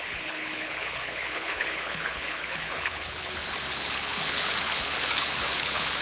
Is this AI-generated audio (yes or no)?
yes